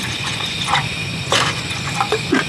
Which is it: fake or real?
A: fake